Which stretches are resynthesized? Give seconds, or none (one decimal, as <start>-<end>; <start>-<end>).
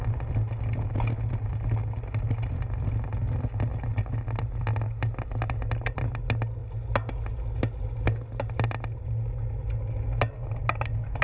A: none